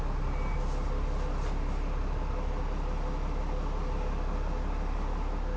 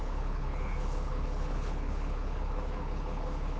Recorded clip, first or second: first